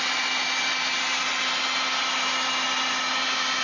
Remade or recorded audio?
recorded